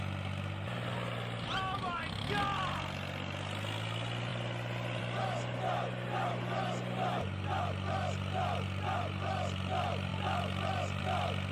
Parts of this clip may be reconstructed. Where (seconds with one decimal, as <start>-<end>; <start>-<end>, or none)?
none